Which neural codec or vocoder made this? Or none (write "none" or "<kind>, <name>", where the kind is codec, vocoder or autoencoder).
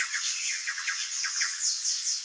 vocoder, WaveNeXt